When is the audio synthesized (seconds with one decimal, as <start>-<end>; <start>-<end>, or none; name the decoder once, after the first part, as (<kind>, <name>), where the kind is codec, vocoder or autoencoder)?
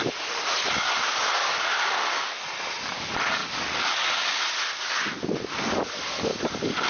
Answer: 1.4-2.4 (codec, DAC); 3.4-4.4; 6.3-6.9